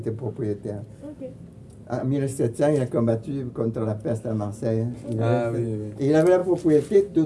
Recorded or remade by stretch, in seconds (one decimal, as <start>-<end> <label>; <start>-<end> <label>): 0.0-7.3 recorded

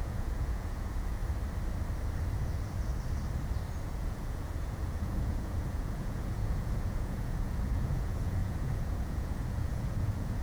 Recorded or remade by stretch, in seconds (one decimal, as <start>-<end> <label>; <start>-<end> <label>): 0.0-1.2 remade; 1.2-2.4 recorded; 2.4-2.9 remade; 2.9-3.8 recorded; 3.8-10.4 remade